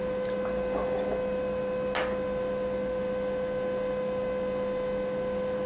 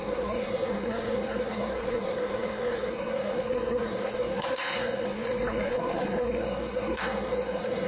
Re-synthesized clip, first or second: second